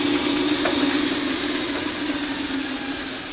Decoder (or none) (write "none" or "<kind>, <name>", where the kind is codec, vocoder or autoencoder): none